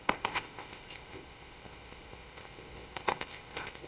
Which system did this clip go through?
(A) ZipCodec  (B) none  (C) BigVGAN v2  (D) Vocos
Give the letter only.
A